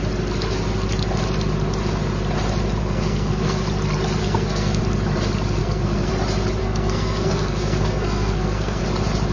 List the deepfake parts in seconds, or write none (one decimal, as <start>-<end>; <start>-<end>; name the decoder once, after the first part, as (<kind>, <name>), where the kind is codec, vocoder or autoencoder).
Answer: 2.8-3.6 (codec, SNAC); 4.2-4.8; 5.6-6.1; 6.6-8.8